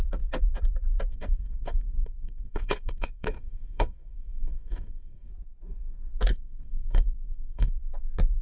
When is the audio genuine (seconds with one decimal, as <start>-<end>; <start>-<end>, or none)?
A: 0.0-1.1; 5.3-6.3; 7.7-8.4